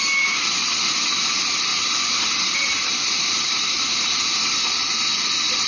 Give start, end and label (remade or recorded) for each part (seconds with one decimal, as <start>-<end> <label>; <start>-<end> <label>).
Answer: 0.0-1.7 recorded; 1.7-5.1 remade; 5.1-5.7 recorded